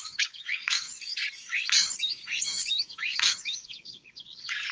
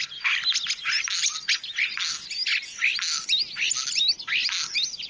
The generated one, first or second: first